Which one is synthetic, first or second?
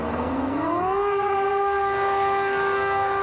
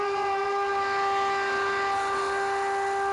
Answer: first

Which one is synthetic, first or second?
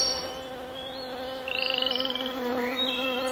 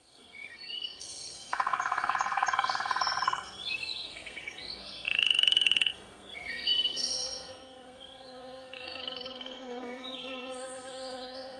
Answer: second